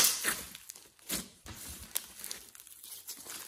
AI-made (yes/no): no